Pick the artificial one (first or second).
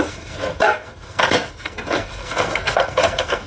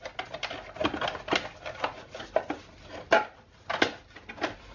first